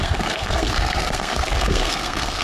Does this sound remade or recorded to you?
remade